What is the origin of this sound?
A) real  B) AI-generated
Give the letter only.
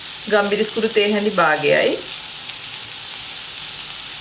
A